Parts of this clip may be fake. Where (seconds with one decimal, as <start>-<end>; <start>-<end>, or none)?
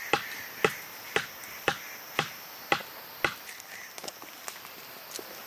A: none